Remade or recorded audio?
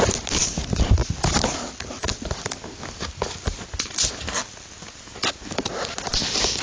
recorded